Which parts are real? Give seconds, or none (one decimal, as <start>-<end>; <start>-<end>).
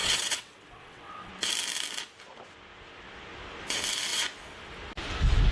1.3-5.5